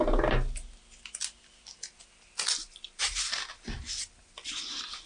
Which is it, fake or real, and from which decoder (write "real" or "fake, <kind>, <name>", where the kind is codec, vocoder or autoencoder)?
real